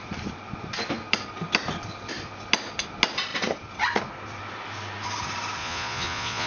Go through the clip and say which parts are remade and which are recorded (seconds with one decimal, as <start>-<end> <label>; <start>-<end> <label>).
0.0-5.6 recorded; 5.6-6.5 remade